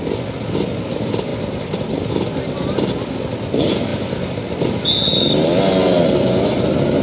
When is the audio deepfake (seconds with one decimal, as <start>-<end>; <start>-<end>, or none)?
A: 1.3-3.1; 3.9-5.6